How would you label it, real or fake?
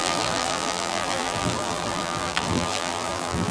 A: fake